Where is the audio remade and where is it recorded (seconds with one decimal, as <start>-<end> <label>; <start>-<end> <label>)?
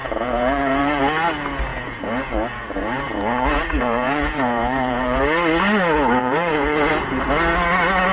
0.0-1.0 remade; 1.0-1.7 recorded; 1.7-5.2 remade; 5.2-6.2 recorded; 6.2-6.9 remade; 6.9-8.1 recorded